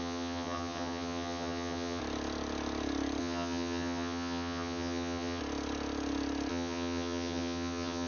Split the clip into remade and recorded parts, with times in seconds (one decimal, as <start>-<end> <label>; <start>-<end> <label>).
0.0-2.0 remade; 2.0-3.2 recorded; 3.2-5.4 remade; 5.4-6.5 recorded; 6.5-8.1 remade